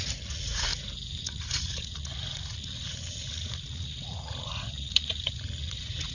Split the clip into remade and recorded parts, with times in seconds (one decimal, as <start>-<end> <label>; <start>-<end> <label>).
0.0-0.7 remade; 0.7-1.2 recorded; 1.2-6.1 remade